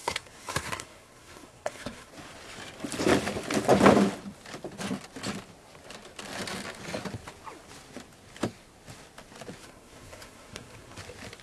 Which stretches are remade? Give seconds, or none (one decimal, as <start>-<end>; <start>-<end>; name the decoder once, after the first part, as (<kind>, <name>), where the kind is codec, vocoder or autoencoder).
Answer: 0.0-2.1 (codec, SNAC); 9.6-11.0